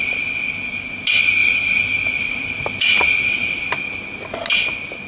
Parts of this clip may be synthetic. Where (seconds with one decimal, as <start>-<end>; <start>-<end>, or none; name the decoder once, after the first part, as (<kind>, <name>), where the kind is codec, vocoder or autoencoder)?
none

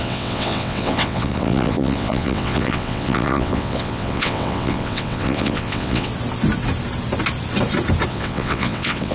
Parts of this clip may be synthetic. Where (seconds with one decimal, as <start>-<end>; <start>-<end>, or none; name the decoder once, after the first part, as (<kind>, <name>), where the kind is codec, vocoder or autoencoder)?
0.0-6.1 (vocoder, WaveNeXt); 8.1-9.1

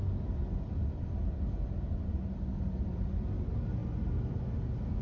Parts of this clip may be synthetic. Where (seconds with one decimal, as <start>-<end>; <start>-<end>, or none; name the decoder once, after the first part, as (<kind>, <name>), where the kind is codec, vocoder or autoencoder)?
0.8-2.2 (vocoder, BigVGAN v2); 3.8-4.4

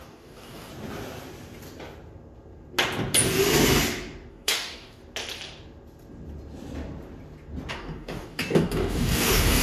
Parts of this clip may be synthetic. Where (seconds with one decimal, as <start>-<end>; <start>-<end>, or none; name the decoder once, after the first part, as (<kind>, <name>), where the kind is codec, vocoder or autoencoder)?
0.0-0.7 (codec, DAC); 4.3-5.0; 7.7-9.6